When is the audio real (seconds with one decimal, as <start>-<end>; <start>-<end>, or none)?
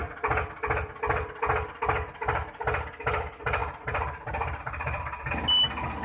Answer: 0.0-3.6; 5.3-6.0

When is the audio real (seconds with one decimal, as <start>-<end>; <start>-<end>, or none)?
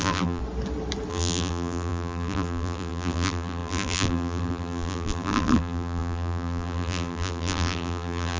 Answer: 0.4-1.1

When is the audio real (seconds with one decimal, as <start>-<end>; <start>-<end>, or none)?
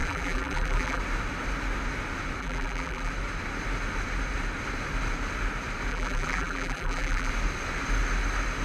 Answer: 1.0-2.4; 3.1-5.9; 7.3-8.6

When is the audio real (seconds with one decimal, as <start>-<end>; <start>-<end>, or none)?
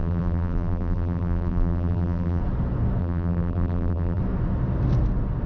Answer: 2.4-3.0; 4.2-5.5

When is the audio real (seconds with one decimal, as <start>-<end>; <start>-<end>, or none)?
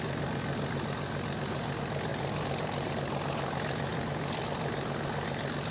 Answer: 0.0-2.1; 2.9-3.9; 4.7-5.7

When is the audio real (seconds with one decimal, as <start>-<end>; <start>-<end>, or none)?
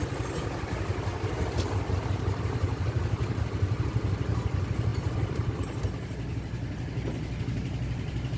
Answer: 0.0-4.9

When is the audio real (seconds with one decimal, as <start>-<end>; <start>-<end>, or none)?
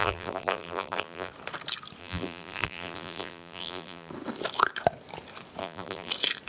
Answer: 1.3-2.0; 4.1-5.6; 6.1-6.5